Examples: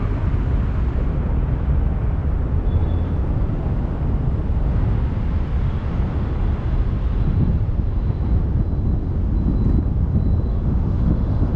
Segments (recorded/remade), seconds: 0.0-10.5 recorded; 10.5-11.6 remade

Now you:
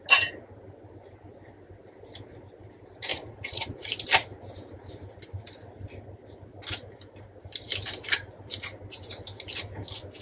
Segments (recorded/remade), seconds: 0.0-3.1 recorded; 3.1-3.9 remade; 3.9-10.2 recorded

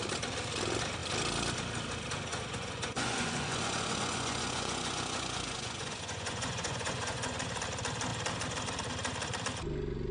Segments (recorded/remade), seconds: 0.0-2.3 recorded; 2.3-7.4 remade; 7.4-10.1 recorded

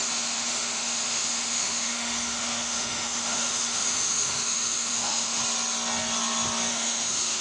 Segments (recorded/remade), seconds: 0.0-5.4 remade; 5.4-6.7 recorded; 6.7-7.4 remade

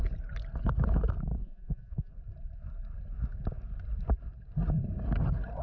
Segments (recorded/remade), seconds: 0.0-1.4 recorded; 1.4-2.1 remade; 2.1-5.6 recorded